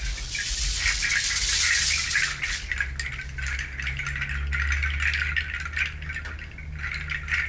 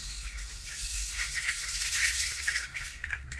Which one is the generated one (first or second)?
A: second